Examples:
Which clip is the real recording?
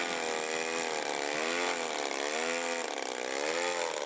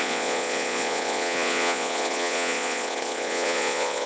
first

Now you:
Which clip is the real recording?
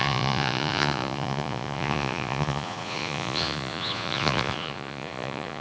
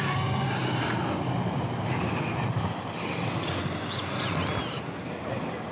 second